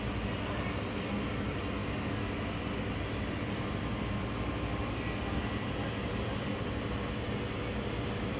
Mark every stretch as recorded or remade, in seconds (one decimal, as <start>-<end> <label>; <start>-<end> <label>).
0.0-8.4 recorded